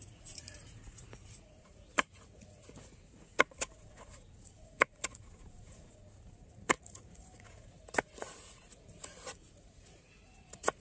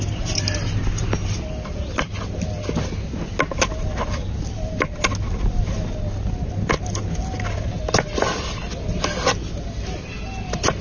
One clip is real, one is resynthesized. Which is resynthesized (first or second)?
first